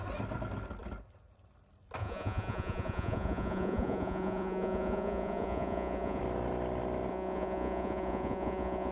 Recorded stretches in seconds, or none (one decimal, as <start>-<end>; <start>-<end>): 0.0-2.0; 6.2-7.1